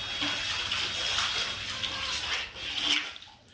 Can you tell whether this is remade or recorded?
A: recorded